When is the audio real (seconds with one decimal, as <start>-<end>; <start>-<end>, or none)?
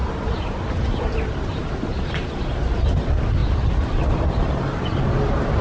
0.7-3.4; 4.3-5.6